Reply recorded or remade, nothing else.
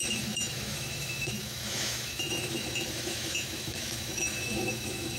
remade